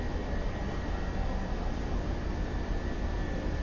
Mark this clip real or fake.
real